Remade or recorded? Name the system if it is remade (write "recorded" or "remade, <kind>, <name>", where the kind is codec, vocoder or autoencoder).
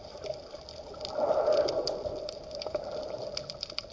recorded